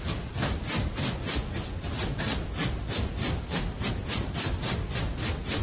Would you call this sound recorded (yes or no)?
yes